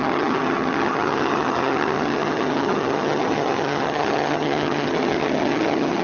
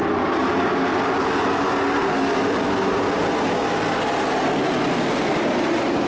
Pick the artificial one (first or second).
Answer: first